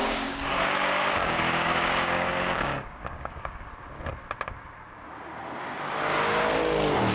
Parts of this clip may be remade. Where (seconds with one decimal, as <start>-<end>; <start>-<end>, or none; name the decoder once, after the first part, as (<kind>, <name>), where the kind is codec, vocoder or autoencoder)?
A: 0.0-3.7 (codec, DAC)